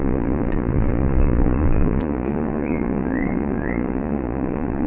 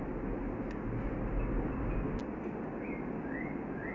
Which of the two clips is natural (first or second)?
second